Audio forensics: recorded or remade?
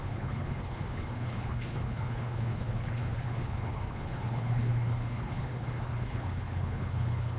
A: remade